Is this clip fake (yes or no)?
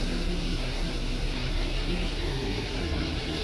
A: yes